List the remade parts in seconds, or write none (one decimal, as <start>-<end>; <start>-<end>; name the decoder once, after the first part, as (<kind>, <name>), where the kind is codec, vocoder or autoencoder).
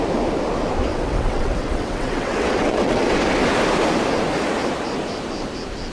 0.9-3.1 (vocoder, WaveNeXt)